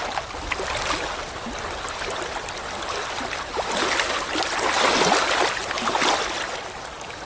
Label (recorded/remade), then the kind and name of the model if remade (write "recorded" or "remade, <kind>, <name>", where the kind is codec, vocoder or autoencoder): recorded